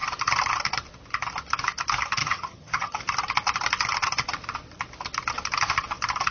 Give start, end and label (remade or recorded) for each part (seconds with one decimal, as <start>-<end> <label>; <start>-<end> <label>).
0.0-2.2 recorded; 2.2-3.0 remade; 3.0-6.3 recorded